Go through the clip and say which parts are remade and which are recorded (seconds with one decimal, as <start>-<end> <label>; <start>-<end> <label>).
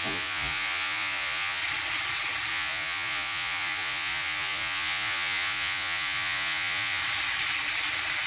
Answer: 0.0-1.6 remade; 1.6-2.5 recorded; 2.5-7.0 remade; 7.0-8.3 recorded